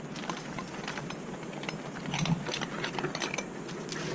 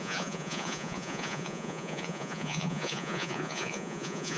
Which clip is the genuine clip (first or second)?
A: first